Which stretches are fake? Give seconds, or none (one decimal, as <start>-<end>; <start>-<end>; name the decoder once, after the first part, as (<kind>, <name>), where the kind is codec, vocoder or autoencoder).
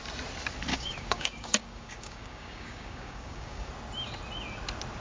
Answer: 0.7-3.7 (codec, DAC)